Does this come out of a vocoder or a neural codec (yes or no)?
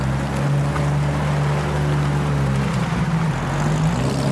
no